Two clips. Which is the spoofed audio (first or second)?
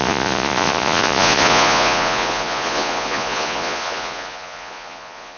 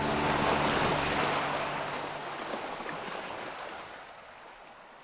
first